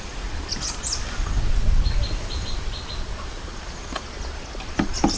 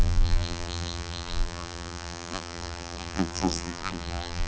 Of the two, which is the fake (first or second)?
second